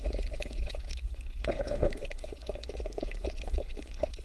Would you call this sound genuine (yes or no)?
no